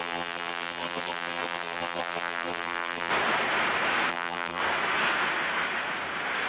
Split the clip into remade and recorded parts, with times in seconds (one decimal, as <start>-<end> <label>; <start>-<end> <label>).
0.0-3.1 remade; 3.1-4.1 recorded; 4.1-4.6 remade; 4.6-6.5 recorded